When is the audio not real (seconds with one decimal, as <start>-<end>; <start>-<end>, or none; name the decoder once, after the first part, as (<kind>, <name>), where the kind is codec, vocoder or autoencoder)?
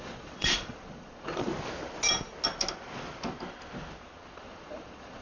0.0-1.5 (vocoder, Vocos); 4.0-5.2